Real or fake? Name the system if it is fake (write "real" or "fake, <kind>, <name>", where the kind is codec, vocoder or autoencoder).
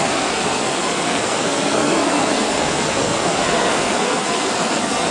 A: fake, codec, SNAC